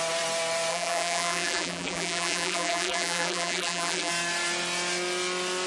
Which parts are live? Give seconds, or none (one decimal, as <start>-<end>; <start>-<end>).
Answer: 0.0-0.7; 4.1-5.7